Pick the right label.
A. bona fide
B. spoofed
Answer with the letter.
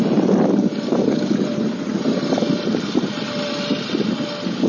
A